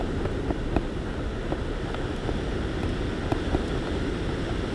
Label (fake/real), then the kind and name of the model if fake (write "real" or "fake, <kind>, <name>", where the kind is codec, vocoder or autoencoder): real